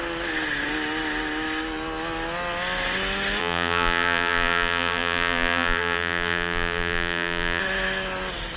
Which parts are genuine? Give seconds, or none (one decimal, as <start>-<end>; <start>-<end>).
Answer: 0.0-3.4; 7.6-8.6